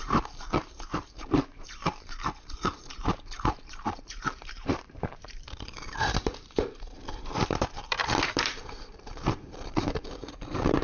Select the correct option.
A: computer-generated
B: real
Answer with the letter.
A